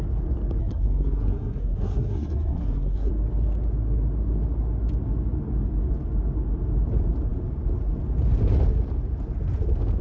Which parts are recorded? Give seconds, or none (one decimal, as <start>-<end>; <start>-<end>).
0.0-0.6; 3.1-10.0